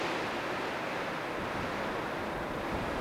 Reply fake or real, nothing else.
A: real